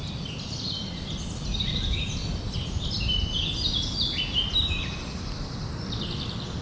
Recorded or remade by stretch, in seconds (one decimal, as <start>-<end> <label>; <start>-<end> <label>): 0.0-6.6 recorded